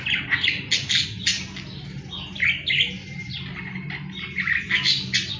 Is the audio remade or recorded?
recorded